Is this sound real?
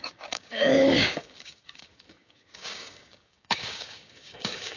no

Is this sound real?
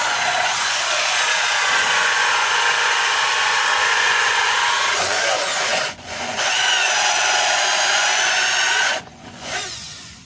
no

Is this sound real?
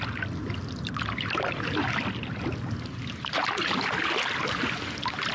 yes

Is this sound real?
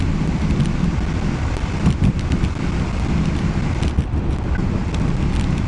yes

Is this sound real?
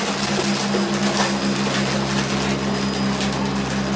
yes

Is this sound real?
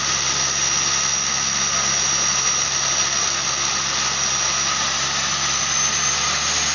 yes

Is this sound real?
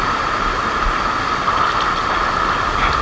yes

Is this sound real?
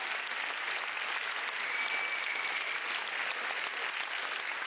yes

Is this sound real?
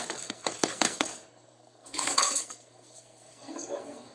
no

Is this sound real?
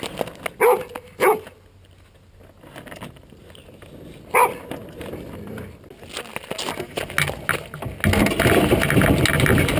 yes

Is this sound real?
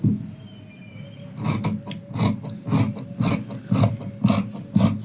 yes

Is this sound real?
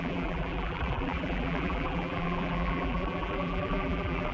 no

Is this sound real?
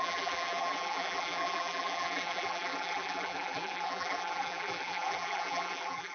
no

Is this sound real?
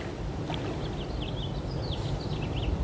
yes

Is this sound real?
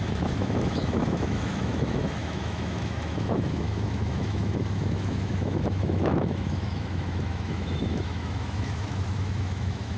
no